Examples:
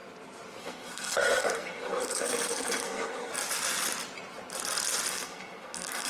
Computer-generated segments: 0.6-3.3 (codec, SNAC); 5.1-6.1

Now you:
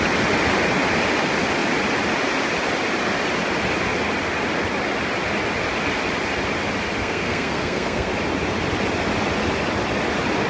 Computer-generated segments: 7.0-8.1 (codec, SNAC)

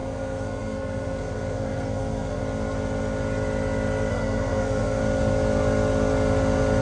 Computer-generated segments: 0.0-2.4 (codec, SNAC); 4.1-5.0

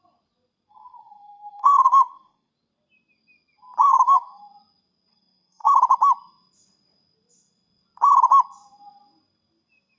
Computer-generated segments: 0.7-2.5 (codec, SNAC); 3.8-4.4; 5.1-5.7

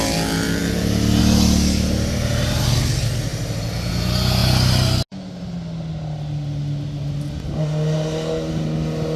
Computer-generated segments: none

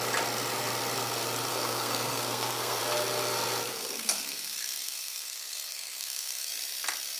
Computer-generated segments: 1.5-2.8 (codec, SNAC); 3.7-6.5

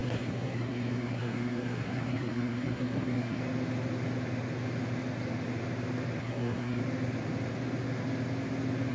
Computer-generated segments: 0.0-3.4 (codec, SNAC); 6.2-6.8

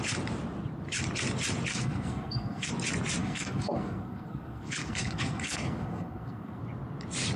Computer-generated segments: 1.7-2.7 (codec, SNAC); 3.2-6.6